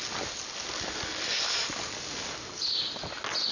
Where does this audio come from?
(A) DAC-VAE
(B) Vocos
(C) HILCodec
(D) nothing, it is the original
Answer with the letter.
D